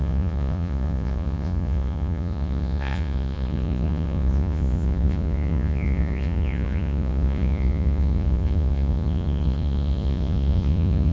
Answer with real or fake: fake